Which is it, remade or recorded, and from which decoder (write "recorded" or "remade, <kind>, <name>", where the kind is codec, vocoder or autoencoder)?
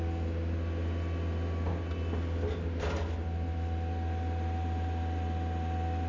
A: recorded